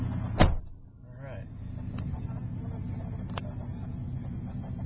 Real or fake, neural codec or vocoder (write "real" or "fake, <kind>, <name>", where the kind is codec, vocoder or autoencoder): real